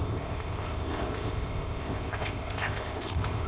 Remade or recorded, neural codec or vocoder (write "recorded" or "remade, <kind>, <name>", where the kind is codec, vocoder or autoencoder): remade, codec, ZipCodec